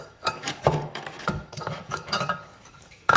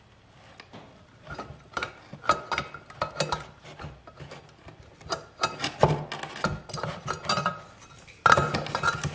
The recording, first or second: second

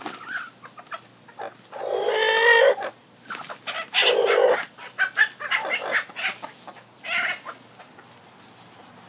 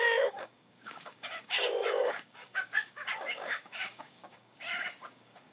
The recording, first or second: first